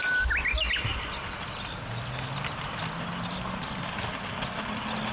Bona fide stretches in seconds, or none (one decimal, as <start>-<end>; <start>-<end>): 0.0-5.1